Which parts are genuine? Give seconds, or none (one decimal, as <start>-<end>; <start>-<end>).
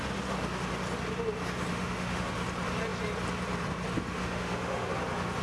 0.0-1.7; 2.3-4.2; 4.9-5.4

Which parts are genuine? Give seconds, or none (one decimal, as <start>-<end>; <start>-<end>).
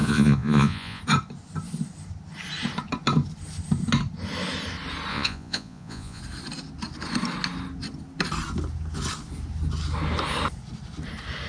1.0-5.1; 6.2-11.5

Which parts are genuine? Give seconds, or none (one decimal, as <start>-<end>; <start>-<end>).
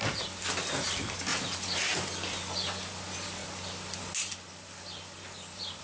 0.0-5.8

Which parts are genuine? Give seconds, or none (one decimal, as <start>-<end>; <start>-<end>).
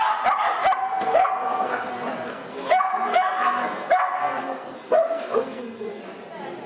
0.0-0.8; 1.9-2.3; 6.0-6.7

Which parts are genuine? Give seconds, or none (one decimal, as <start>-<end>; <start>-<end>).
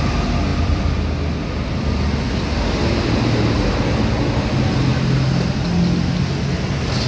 0.0-0.5; 1.7-7.1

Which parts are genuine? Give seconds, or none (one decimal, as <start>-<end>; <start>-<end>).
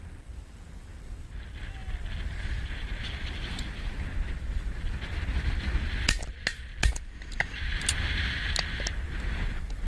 0.0-9.9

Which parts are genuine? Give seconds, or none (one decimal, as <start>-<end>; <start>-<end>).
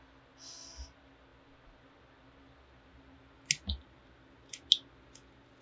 0.0-5.6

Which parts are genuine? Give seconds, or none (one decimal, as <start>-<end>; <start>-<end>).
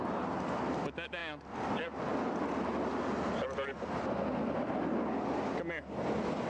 0.0-6.5